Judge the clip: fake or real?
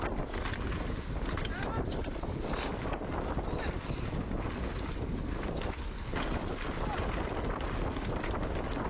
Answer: real